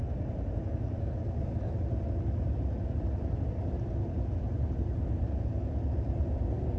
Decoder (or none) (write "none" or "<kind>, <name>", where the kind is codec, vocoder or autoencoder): none